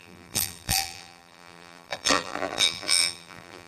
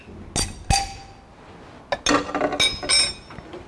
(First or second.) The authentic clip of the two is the second